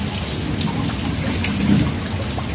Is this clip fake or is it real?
real